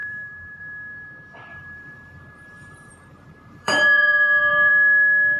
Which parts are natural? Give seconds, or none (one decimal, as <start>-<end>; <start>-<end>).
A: 0.6-1.5; 4.7-5.4